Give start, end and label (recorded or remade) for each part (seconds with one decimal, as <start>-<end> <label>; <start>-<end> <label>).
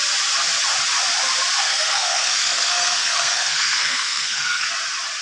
0.0-1.6 recorded; 1.6-4.7 remade; 4.7-5.2 recorded